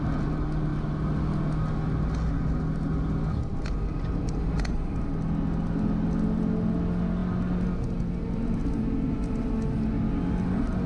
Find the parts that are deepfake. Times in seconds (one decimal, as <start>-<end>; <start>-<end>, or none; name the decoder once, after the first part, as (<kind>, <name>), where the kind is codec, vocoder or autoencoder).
3.9-4.9 (vocoder, BigVGAN v2)